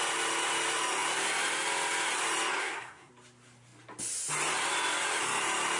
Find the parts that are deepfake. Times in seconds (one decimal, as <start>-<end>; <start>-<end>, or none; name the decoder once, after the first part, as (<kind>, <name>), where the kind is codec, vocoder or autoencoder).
2.6-3.1 (codec, SNAC)